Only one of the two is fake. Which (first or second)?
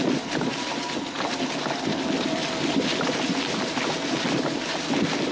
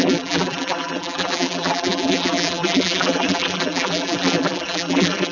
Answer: second